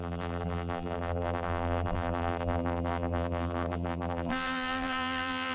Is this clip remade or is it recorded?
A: remade